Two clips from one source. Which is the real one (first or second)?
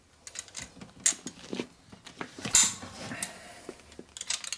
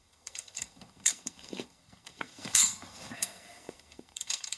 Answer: first